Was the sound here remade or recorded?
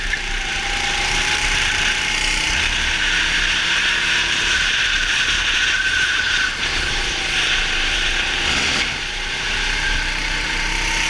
remade